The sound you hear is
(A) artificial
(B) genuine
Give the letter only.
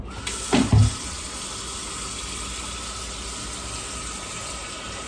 B